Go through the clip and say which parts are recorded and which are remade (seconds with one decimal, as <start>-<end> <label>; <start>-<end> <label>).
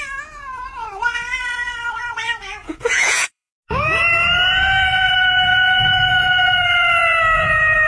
0.0-2.6 recorded; 2.6-3.5 remade; 3.5-5.5 recorded; 5.5-6.6 remade; 6.6-7.9 recorded